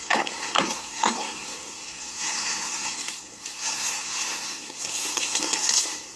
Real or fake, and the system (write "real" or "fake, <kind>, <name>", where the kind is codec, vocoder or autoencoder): fake, codec, SNAC